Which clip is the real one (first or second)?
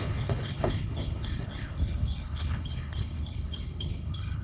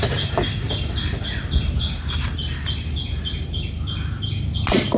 second